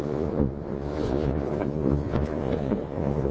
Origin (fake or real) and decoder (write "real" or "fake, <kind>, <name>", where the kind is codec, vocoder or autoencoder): fake, vocoder, Vocos